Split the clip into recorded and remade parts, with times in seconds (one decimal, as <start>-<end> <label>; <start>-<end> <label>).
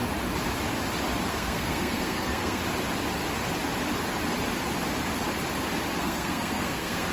0.0-1.3 recorded; 1.3-2.6 remade; 2.6-6.0 recorded; 6.0-7.1 remade